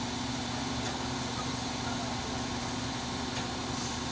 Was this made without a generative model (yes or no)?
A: yes